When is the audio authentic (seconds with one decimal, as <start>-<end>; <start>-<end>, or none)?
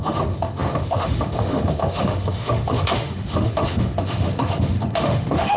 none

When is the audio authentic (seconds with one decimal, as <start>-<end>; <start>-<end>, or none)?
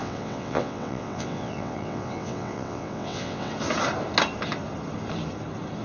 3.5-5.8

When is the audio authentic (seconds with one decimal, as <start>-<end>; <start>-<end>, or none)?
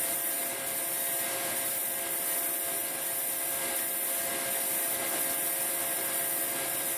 0.0-7.0